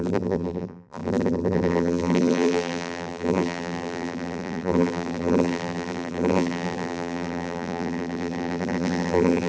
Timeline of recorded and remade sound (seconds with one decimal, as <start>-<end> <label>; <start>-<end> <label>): 0.0-9.5 remade